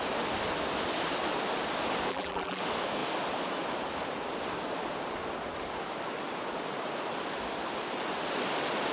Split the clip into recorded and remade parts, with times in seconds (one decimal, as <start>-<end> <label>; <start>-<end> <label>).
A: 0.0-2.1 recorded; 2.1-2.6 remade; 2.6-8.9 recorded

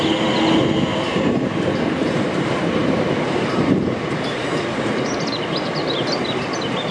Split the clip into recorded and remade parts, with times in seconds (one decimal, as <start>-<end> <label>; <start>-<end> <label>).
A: 0.0-0.9 recorded; 0.9-5.0 remade; 5.0-6.9 recorded

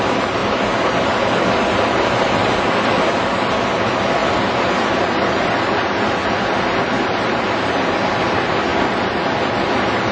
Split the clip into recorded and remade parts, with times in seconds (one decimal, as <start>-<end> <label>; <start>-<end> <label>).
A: 0.0-10.1 recorded

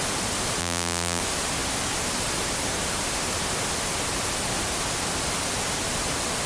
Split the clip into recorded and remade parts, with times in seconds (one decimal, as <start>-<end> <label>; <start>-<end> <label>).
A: 0.0-0.6 recorded; 0.6-1.2 remade; 1.2-6.5 recorded